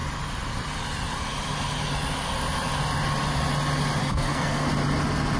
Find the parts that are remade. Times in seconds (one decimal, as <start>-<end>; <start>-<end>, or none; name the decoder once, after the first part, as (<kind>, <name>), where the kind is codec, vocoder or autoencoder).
4.0-4.7 (codec, SNAC)